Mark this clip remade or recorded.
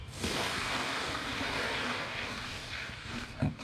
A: remade